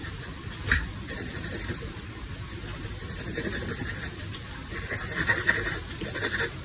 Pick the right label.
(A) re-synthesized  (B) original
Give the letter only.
A